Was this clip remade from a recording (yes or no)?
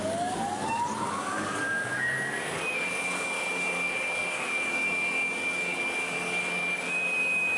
yes